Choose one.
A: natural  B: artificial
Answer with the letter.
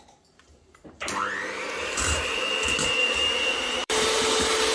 B